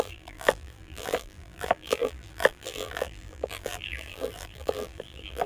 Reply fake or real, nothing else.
fake